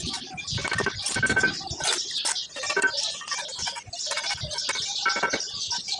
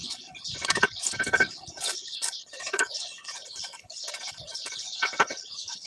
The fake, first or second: second